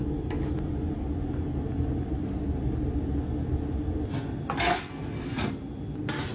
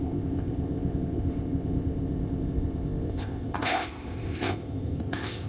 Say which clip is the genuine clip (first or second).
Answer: first